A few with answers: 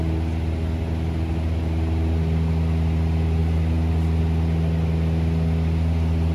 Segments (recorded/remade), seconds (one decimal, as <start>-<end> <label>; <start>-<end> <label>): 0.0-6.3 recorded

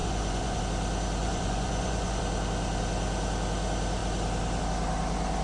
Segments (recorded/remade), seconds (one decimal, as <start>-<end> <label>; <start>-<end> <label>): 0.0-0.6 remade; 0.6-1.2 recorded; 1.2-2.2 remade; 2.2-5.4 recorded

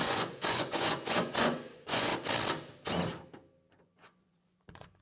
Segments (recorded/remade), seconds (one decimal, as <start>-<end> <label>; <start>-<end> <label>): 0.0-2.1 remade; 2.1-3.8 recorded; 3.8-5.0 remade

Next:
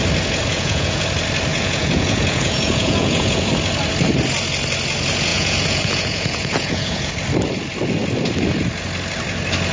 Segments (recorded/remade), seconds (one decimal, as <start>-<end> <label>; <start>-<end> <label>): 0.0-0.5 recorded; 0.5-1.0 remade; 1.0-1.5 recorded; 1.5-3.5 remade; 3.5-5.3 recorded; 5.3-7.1 remade; 7.1-9.7 recorded